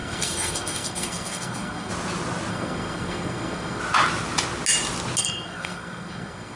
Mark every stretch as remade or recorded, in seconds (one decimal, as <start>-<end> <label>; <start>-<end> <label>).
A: 0.0-1.9 remade; 1.9-2.5 recorded; 2.5-3.8 remade; 3.8-5.2 recorded; 5.2-6.6 remade